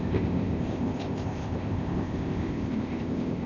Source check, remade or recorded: remade